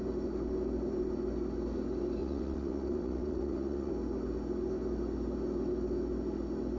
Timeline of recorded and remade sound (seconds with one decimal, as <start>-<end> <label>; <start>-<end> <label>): 0.0-2.2 recorded; 2.2-3.9 remade; 3.9-6.8 recorded